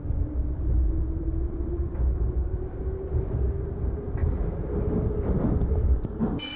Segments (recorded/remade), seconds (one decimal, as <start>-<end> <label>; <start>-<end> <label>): 0.0-6.6 recorded